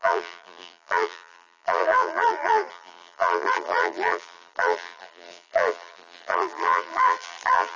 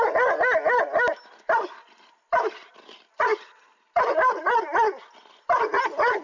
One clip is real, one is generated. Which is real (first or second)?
second